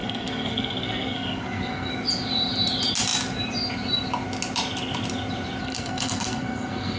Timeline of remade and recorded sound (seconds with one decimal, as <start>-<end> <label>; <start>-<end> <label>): 0.0-1.9 remade; 1.9-5.6 recorded; 5.6-7.0 remade